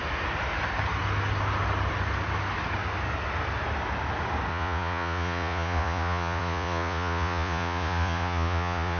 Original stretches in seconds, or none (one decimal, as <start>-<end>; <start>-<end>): 0.0-4.5